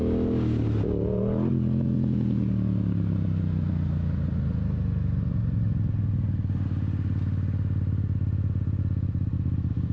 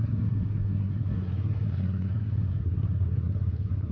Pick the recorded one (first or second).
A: first